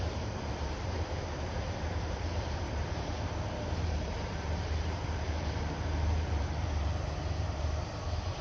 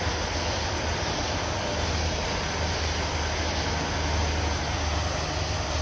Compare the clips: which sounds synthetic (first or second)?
first